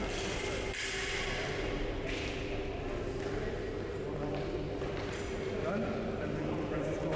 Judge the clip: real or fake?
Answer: real